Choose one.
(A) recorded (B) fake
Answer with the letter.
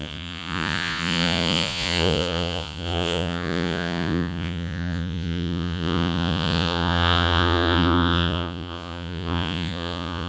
B